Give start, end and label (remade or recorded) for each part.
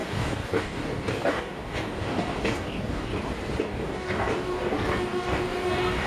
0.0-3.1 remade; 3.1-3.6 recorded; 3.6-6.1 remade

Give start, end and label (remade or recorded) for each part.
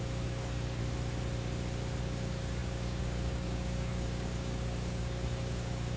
0.0-0.8 remade; 0.8-2.0 recorded; 2.0-6.0 remade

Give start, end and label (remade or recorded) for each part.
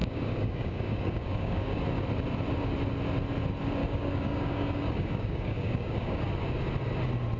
0.0-1.8 remade; 1.8-3.8 recorded; 3.8-6.2 remade; 6.2-7.4 recorded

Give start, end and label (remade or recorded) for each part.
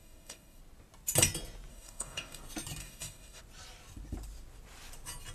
0.0-0.6 remade; 0.6-1.7 recorded; 1.7-2.4 remade; 2.4-2.8 recorded; 2.8-3.4 remade; 3.4-5.3 recorded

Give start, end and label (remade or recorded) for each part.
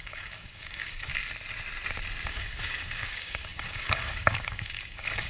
0.0-1.1 remade; 1.1-2.3 recorded; 2.3-5.3 remade